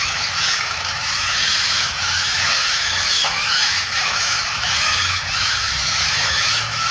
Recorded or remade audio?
remade